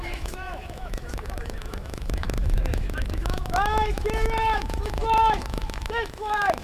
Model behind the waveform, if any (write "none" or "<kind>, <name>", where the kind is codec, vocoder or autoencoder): autoencoder, DAC-VAE